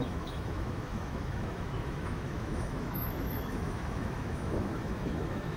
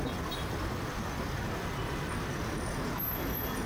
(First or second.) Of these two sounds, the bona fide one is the second